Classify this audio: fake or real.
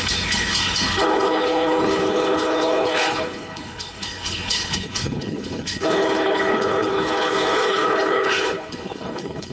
fake